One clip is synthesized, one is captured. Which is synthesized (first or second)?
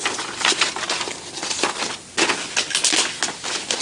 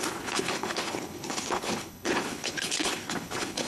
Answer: second